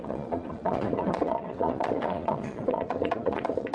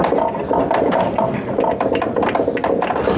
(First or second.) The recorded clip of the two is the second